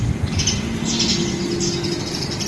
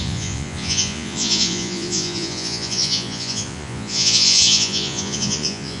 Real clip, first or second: first